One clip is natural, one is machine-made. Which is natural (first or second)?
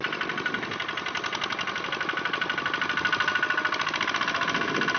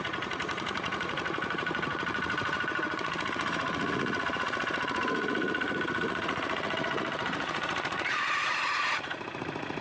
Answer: first